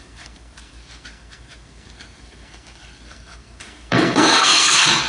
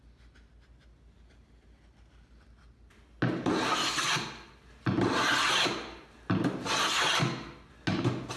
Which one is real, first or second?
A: second